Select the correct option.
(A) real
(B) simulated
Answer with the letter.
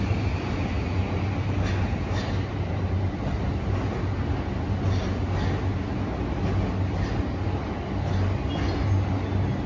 A